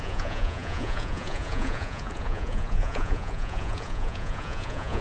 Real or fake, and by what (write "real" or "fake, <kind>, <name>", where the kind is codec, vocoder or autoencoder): fake, vocoder, Vocos